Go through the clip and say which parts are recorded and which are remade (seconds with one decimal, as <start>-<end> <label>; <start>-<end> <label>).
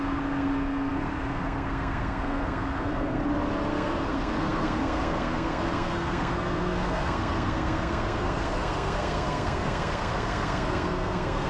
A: 0.0-3.2 remade; 3.2-3.7 recorded; 3.7-11.5 remade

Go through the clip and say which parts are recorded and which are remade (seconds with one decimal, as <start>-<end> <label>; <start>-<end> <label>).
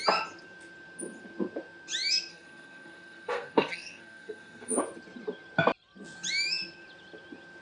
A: 0.0-2.3 recorded; 2.3-4.8 remade; 4.8-7.6 recorded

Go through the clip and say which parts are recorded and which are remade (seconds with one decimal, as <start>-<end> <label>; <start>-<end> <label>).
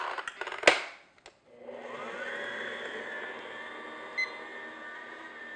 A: 0.0-5.6 recorded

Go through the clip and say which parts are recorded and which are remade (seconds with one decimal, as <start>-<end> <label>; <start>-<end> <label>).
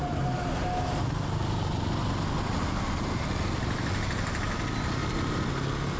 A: 0.0-6.0 recorded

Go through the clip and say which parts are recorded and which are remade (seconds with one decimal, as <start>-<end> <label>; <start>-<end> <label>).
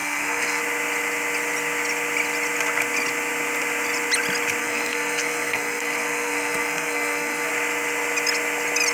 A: 0.0-0.6 remade; 0.6-4.6 recorded; 4.6-7.5 remade; 7.5-8.9 recorded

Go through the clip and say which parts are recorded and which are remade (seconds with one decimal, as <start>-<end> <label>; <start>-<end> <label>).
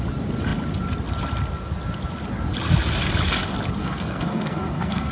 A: 0.0-3.8 recorded; 3.8-5.1 remade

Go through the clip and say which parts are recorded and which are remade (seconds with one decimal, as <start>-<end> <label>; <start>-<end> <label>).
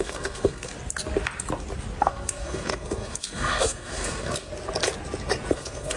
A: 0.0-0.7 remade; 0.7-2.0 recorded; 2.0-4.5 remade; 4.5-5.5 recorded; 5.5-6.0 remade